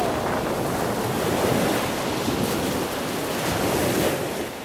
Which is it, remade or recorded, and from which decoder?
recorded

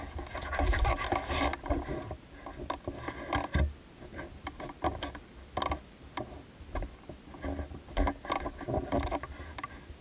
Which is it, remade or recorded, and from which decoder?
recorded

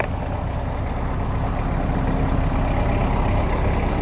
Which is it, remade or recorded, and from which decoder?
recorded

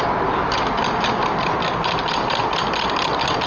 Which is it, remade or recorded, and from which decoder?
recorded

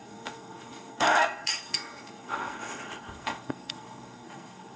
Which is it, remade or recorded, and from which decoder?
remade, codec, SNAC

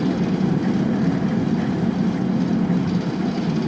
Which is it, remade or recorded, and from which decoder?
recorded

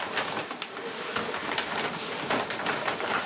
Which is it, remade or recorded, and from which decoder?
recorded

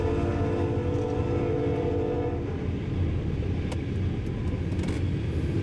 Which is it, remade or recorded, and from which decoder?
recorded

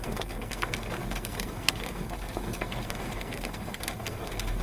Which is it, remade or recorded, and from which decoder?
remade, codec, SNAC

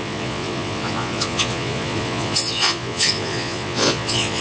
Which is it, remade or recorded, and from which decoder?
remade, vocoder, Vocos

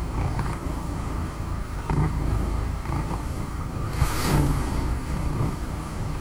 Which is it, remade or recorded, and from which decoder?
remade, codec, DAC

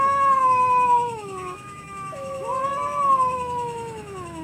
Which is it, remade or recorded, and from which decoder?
remade, autoencoder, DAC-VAE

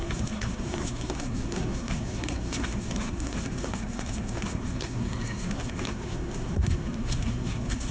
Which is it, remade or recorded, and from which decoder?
remade, codec, SNAC